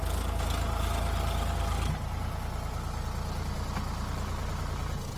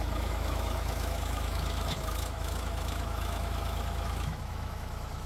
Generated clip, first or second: second